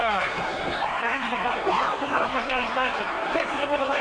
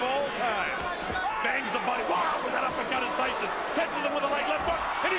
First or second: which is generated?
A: first